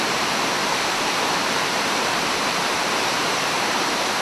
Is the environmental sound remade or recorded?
remade